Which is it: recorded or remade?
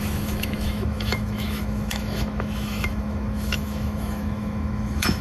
remade